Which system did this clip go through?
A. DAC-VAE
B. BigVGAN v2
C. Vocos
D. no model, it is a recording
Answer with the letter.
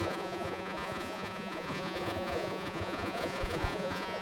C